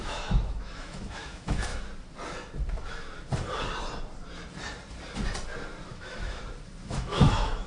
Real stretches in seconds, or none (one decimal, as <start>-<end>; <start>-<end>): 1.7-5.9; 6.4-6.9